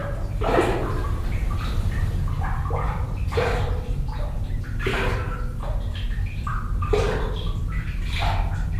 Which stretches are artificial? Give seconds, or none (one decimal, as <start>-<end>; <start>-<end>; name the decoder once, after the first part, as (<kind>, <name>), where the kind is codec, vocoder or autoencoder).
none